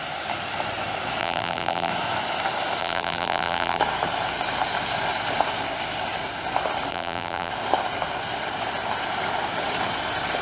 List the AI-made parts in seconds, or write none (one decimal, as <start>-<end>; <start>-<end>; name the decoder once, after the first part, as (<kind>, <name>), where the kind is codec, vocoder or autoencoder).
1.2-1.9 (vocoder, BigVGAN v2); 2.8-3.8; 6.9-7.5